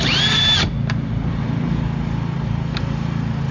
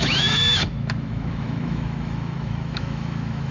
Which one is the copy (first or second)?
second